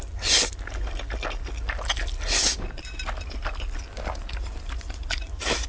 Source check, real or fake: real